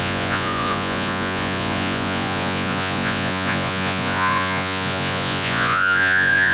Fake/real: fake